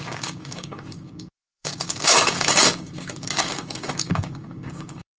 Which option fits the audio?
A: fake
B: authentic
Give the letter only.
A